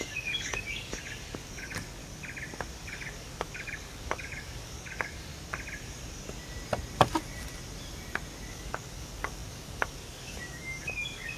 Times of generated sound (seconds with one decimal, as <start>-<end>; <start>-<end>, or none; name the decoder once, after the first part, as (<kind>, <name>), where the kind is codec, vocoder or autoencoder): 0.0-2.0 (codec, DAC); 2.7-5.3; 8.5-11.4

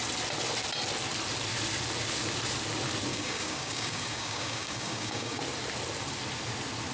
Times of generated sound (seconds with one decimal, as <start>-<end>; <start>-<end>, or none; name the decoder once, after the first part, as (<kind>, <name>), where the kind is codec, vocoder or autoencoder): 3.1-5.4 (codec, DAC)

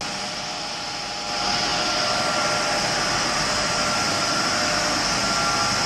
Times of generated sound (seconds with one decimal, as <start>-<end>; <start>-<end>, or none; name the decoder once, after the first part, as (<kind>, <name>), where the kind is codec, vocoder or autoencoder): none

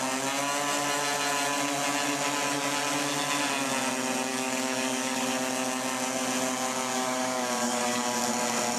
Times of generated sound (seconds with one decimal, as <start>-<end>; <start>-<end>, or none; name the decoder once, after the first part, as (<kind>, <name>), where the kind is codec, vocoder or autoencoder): 4.3-5.5 (codec, DAC); 6.9-8.3

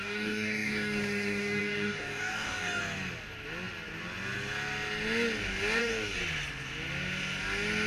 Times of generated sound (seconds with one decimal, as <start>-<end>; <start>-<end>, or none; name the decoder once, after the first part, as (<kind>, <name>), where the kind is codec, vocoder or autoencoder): 0.0-2.8 (codec, DAC); 5.8-6.2

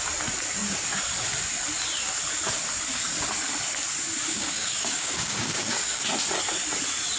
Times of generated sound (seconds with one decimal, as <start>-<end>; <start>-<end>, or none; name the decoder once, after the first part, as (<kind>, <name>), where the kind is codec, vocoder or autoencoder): 4.3-6.0 (codec, DAC)